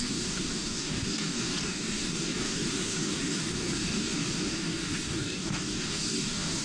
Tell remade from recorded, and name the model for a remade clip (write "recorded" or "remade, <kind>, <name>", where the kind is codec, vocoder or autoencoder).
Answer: remade, codec, DAC